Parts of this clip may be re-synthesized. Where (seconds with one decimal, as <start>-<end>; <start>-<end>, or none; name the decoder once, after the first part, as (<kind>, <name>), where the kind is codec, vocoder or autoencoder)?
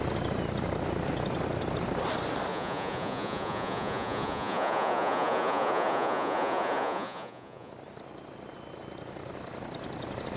2.5-7.7 (vocoder, Vocos)